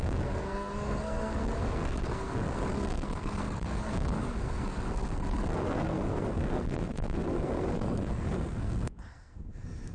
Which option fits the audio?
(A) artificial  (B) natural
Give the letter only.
A